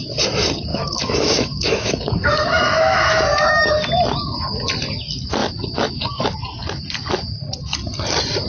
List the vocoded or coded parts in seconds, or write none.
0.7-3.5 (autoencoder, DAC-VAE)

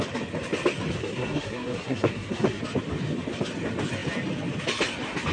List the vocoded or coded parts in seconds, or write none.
1.0-2.6 (codec, SNAC)

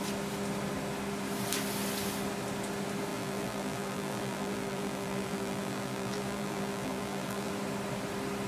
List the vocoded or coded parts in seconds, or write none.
3.1-7.5 (vocoder, BigVGAN v2)

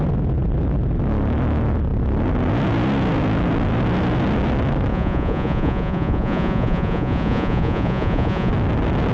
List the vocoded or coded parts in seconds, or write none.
4.9-8.5 (vocoder, Vocos)

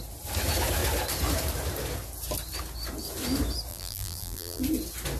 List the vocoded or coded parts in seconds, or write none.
3.7-4.6 (vocoder, BigVGAN v2)

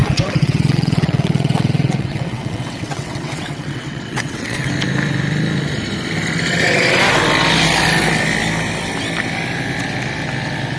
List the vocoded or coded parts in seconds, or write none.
0.0-4.7 (vocoder, WaveNeXt)